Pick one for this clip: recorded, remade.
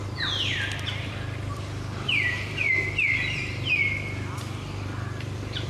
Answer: remade